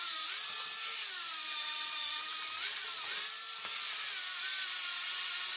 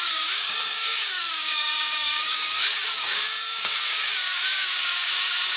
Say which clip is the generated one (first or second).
second